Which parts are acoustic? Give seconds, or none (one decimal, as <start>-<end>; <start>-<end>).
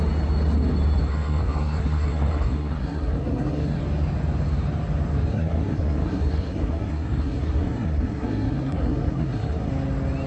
0.0-1.1; 3.8-5.3; 9.7-10.3